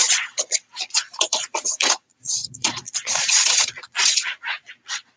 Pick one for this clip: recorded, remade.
remade